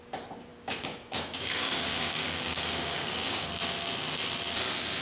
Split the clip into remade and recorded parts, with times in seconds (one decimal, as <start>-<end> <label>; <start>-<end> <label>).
0.0-0.5 recorded; 0.5-3.5 remade; 3.5-5.0 recorded